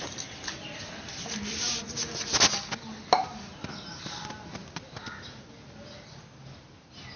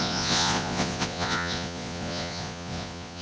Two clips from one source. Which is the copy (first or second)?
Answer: second